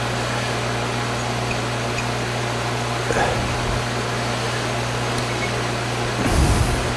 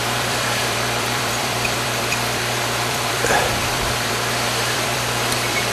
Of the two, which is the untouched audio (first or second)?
first